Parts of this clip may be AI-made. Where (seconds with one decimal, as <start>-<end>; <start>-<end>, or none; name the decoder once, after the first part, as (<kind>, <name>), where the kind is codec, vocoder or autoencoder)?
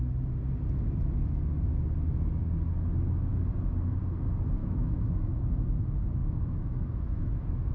4.6-5.5 (autoencoder, DAC-VAE); 6.2-7.7